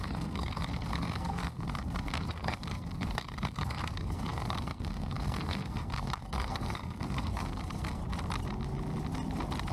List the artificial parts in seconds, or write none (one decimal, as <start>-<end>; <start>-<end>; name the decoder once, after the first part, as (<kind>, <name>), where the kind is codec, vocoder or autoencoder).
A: 0.0-8.0 (codec, SNAC)